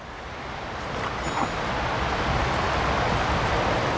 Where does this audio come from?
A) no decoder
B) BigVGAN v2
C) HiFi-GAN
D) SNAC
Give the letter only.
A